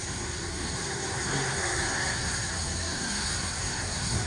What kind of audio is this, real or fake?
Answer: fake